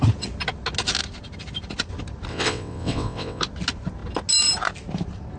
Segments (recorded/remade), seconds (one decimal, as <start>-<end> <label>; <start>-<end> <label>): 0.0-2.3 recorded; 2.3-3.4 remade; 3.4-5.4 recorded